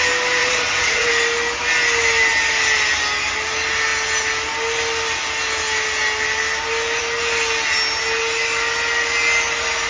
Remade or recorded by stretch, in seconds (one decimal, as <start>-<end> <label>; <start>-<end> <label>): 0.0-0.4 recorded; 0.4-1.1 remade; 1.1-9.9 recorded